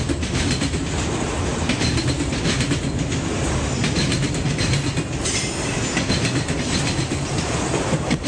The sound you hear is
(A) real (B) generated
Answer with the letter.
A